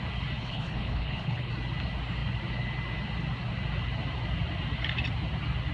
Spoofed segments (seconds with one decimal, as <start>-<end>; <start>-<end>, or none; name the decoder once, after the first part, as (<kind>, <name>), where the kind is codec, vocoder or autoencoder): 0.4-1.5 (codec, HILCodec)